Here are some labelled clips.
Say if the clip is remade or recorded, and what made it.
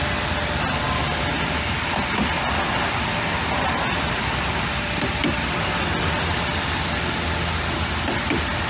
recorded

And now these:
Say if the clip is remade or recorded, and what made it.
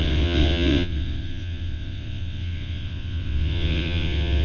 remade, vocoder, WaveNeXt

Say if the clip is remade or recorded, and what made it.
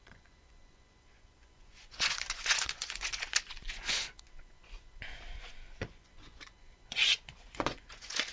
remade, vocoder, Vocos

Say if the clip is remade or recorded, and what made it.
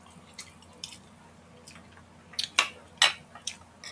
recorded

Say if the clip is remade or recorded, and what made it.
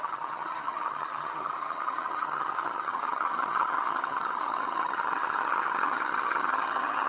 remade, vocoder, HiFi-GAN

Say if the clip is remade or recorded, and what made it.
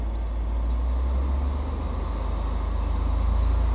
recorded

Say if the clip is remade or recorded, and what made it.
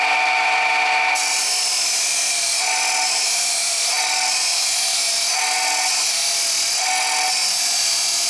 recorded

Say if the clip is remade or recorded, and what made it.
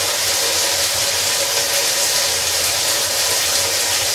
recorded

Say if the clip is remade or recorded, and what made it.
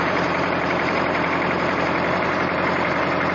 remade, vocoder, BigVGAN v2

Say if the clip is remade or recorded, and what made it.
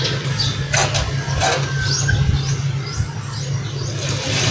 recorded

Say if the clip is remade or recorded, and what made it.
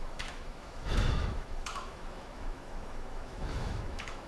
remade, autoencoder, DAC-VAE